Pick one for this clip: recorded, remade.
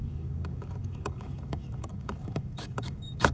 remade